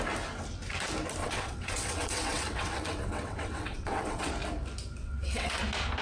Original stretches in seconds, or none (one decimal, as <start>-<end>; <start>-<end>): 0.0-1.2; 4.3-5.0; 5.6-6.0